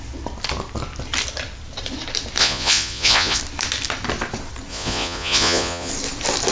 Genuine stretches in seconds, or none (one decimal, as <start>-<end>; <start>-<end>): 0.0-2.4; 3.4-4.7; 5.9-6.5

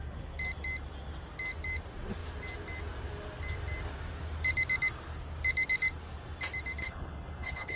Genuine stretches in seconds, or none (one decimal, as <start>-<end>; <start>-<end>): 0.0-6.8

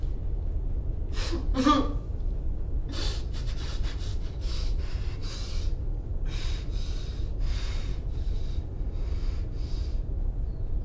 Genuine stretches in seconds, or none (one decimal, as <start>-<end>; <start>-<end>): 0.0-4.1; 4.8-7.9; 8.4-10.8

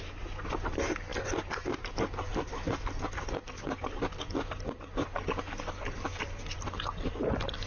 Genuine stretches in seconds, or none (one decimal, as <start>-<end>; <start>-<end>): 0.0-2.3; 3.4-5.8

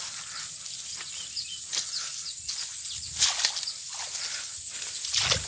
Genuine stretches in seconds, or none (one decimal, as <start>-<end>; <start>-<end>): 0.0-5.5

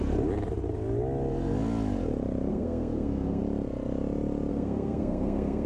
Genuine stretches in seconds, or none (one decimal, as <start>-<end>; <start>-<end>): 0.0-2.5; 3.4-4.5

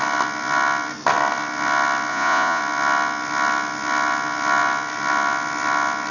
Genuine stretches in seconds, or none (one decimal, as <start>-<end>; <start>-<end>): 0.0-2.1; 2.6-6.1